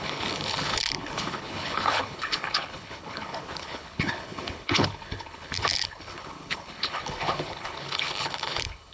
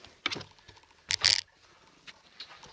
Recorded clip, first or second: second